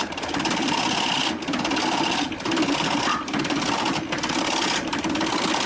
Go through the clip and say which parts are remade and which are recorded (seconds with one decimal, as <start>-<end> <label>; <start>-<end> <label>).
0.0-5.7 recorded

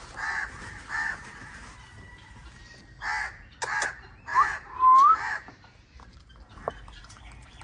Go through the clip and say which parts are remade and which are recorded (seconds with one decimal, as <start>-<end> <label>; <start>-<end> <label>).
0.0-2.6 remade; 2.6-3.9 recorded; 3.9-7.6 remade

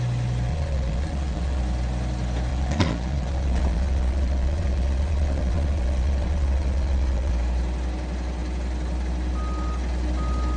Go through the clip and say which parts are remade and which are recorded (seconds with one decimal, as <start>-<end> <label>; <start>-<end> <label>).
0.0-0.5 recorded; 0.5-1.6 remade; 1.6-2.5 recorded; 2.5-7.3 remade; 7.3-10.6 recorded

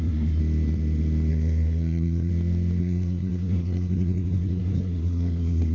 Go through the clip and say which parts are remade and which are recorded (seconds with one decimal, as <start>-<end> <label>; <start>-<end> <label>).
0.0-0.4 remade; 0.4-1.3 recorded; 1.3-2.3 remade; 2.3-2.8 recorded; 2.8-5.7 remade

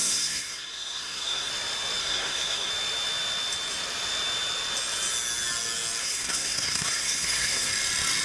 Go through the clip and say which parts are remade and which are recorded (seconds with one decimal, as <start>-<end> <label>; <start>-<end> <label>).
0.0-1.5 remade; 1.5-2.0 recorded; 2.0-2.7 remade; 2.7-6.0 recorded; 6.0-7.7 remade; 7.7-8.2 recorded

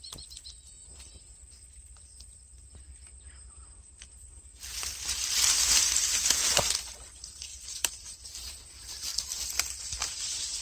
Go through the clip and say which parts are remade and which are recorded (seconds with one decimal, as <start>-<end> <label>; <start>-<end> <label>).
0.0-7.5 recorded; 7.5-8.3 remade; 8.3-9.1 recorded; 9.1-9.8 remade; 9.8-10.6 recorded